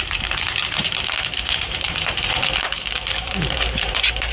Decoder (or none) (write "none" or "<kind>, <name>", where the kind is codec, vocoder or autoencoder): vocoder, BigVGAN v2